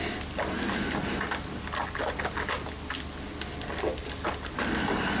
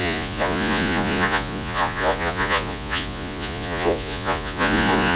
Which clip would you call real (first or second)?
first